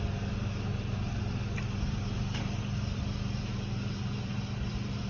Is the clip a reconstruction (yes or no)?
no